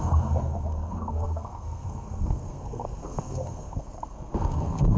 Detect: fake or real fake